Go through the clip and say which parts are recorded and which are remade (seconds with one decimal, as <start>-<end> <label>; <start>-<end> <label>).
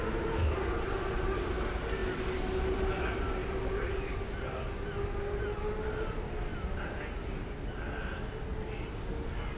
0.0-9.6 recorded